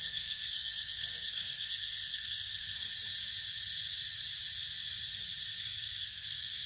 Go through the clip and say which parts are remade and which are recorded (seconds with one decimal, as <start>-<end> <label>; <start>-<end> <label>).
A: 0.0-2.9 remade; 2.9-5.6 recorded; 5.6-6.7 remade